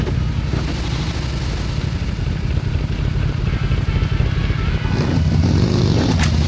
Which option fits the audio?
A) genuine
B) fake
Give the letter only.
A